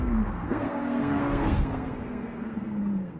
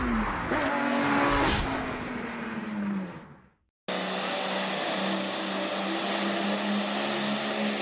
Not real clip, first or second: first